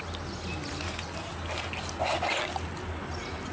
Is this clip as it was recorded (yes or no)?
yes